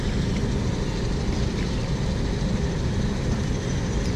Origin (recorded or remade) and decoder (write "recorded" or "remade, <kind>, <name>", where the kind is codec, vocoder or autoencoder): recorded